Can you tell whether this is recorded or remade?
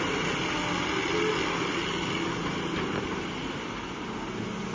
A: recorded